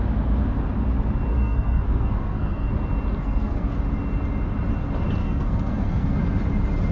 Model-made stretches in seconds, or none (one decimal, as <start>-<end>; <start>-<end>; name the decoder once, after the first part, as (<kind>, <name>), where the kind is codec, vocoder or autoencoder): 1.3-2.7 (codec, SNAC); 3.2-3.7; 5.2-6.2